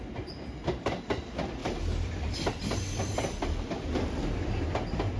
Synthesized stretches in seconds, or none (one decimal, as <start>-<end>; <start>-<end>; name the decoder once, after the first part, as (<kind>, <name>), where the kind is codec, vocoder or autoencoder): 1.6-4.7 (vocoder, BigVGAN v2)